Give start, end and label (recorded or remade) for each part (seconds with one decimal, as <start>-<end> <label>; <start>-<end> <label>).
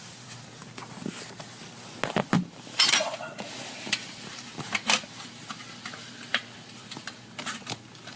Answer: 0.0-0.6 remade; 0.6-2.1 recorded; 2.1-8.2 remade